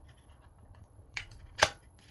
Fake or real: fake